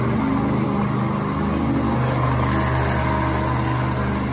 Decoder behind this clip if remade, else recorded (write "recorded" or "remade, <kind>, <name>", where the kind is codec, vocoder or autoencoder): recorded